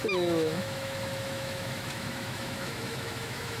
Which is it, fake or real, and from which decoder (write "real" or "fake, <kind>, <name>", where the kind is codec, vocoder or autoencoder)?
fake, autoencoder, DAC-VAE